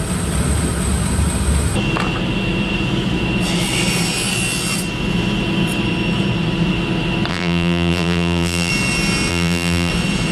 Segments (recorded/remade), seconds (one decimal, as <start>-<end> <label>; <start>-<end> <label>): 0.0-7.3 recorded; 7.3-8.7 remade; 8.7-9.3 recorded; 9.3-9.9 remade; 9.9-10.3 recorded